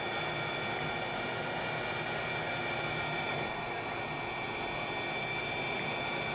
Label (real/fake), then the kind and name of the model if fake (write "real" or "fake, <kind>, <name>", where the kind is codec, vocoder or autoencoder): real